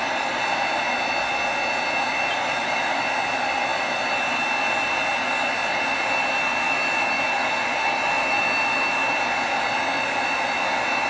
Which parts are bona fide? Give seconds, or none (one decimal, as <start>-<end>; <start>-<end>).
0.0-11.1